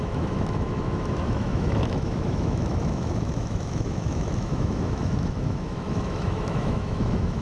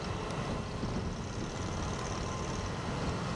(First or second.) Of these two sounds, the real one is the second